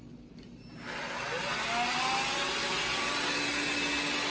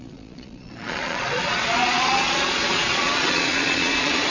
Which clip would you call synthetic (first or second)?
second